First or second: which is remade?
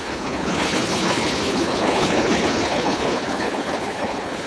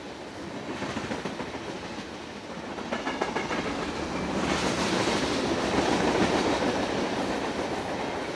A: first